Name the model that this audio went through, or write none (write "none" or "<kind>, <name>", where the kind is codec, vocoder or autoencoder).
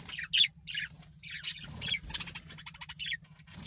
none